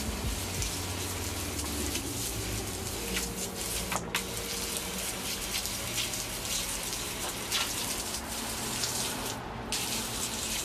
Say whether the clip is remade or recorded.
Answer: recorded